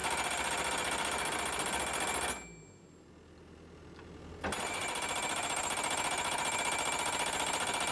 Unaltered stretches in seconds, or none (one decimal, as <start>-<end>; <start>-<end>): 0.0-4.8; 6.6-7.9